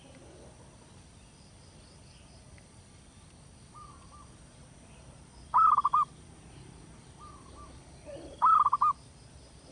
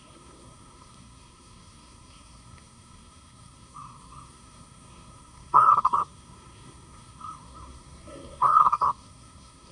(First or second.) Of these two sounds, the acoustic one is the first